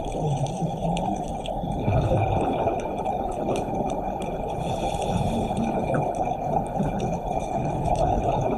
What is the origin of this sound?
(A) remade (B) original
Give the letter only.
A